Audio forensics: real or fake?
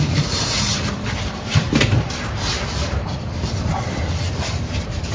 fake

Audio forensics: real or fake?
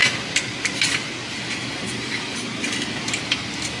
real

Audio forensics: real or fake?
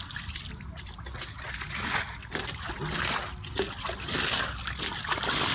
real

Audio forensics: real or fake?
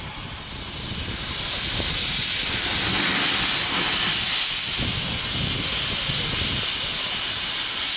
real